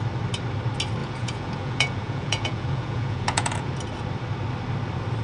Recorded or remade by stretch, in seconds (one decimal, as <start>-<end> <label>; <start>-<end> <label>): 0.0-1.0 recorded; 1.0-3.7 remade; 3.7-5.2 recorded